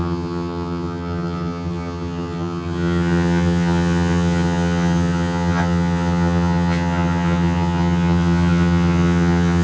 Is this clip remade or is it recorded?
remade